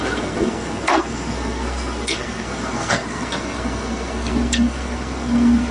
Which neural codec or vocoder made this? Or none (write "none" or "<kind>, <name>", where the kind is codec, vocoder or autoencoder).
codec, SNAC